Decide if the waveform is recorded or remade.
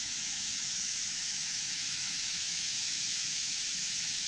remade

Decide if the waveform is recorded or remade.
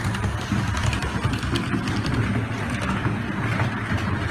recorded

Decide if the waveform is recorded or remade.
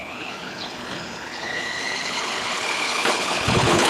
remade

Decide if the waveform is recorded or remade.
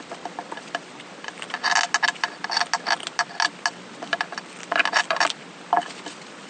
recorded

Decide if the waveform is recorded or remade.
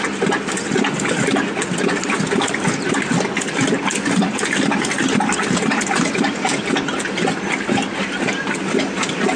recorded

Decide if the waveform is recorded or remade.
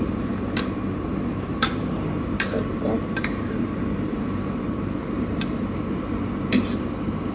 remade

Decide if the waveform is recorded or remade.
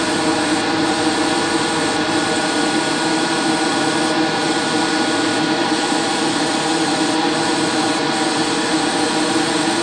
recorded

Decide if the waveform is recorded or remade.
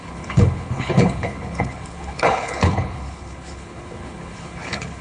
remade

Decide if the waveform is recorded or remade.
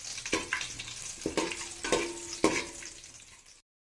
recorded